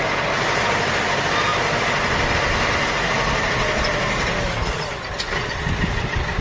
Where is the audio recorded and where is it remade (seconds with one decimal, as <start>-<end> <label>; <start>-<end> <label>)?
0.0-6.4 recorded